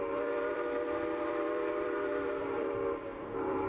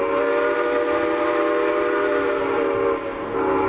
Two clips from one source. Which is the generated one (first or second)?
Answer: first